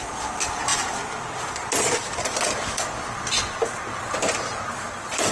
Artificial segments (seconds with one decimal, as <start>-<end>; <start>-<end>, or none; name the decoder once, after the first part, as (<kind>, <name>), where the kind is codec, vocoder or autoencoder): 0.0-0.7 (vocoder, BigVGAN v2); 3.9-5.3